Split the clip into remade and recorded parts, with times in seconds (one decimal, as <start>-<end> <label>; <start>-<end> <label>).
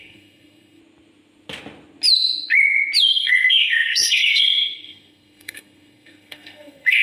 0.0-0.8 remade; 0.8-3.1 recorded; 3.1-7.0 remade